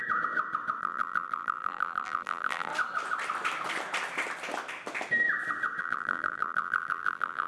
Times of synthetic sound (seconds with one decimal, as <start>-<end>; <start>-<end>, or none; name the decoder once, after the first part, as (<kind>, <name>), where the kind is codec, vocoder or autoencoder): 0.8-2.7 (vocoder, BigVGAN v2); 5.8-7.5